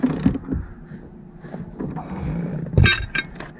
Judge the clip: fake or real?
real